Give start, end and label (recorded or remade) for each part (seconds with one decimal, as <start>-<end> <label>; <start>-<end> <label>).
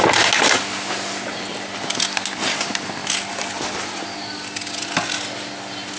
0.0-6.0 recorded